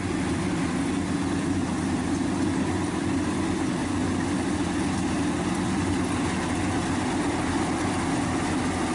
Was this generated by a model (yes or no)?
no